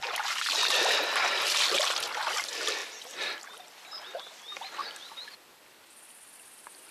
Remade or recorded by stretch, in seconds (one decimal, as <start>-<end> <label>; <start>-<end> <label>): 0.0-2.8 recorded; 2.8-3.4 remade; 3.4-6.9 recorded